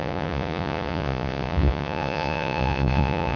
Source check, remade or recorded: remade